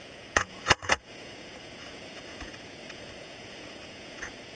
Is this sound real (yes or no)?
no